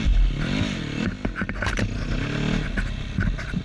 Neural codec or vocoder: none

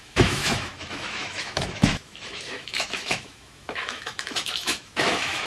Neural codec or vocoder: autoencoder, DAC-VAE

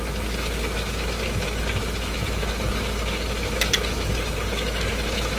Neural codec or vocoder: autoencoder, DAC-VAE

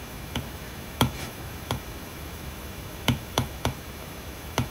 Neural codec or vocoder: autoencoder, DAC-VAE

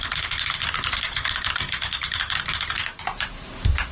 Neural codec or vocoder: none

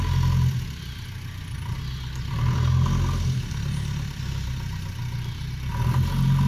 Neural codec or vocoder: none